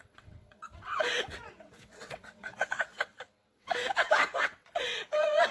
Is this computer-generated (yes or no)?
yes